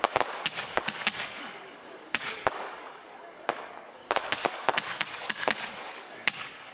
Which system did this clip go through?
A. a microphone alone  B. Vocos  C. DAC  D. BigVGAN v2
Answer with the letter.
C